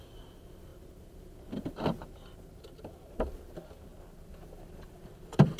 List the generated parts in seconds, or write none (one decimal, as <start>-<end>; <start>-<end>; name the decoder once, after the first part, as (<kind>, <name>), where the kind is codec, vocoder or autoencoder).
0.7-2.7 (vocoder, BigVGAN v2); 3.9-5.6